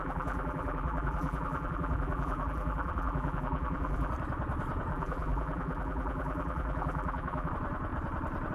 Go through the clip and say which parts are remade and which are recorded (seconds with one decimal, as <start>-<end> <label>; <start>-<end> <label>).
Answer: 0.0-4.1 remade; 4.1-4.9 recorded; 4.9-7.5 remade; 7.5-8.5 recorded